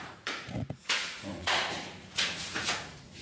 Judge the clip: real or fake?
fake